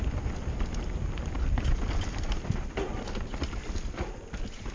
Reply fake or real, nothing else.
real